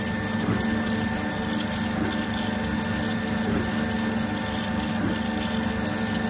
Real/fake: real